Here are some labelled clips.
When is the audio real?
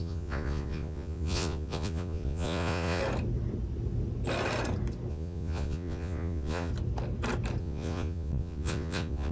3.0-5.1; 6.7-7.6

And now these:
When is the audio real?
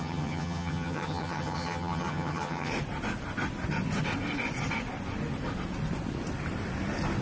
2.7-7.2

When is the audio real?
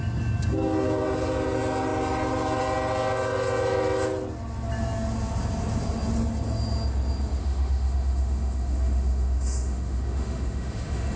0.0-7.4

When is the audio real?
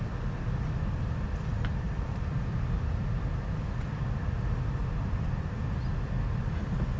0.0-1.5; 2.2-7.0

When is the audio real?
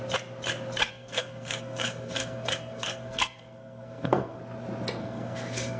0.0-0.9; 4.4-5.0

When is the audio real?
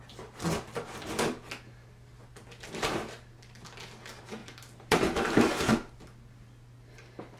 0.0-4.4; 5.5-7.4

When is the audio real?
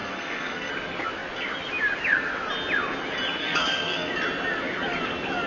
0.7-3.4; 4.1-5.5